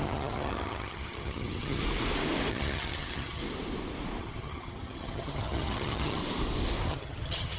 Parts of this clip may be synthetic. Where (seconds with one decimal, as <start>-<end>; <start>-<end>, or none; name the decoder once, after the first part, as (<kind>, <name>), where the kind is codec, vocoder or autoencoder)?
0.0-1.8 (vocoder, HiFi-GAN); 2.5-3.4; 4.2-6.2; 6.9-7.6